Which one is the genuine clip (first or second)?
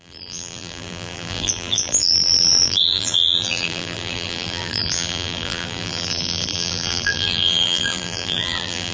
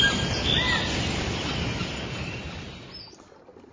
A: second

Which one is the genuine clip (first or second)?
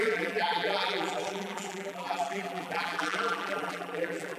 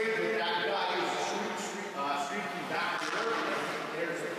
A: second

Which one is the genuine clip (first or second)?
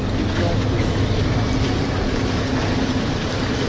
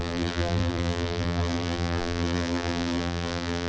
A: first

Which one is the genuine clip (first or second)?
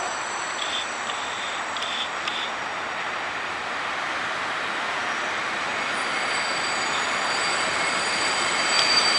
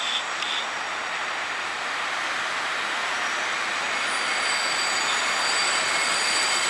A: second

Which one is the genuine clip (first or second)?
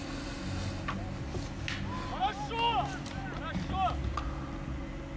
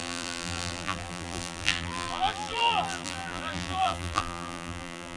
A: first